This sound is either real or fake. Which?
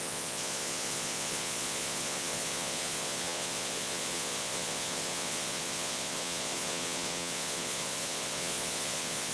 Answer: fake